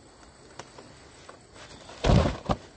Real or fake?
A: real